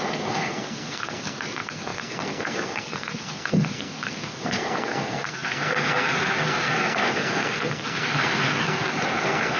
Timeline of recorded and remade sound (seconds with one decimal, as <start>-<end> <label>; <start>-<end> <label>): 0.0-9.6 remade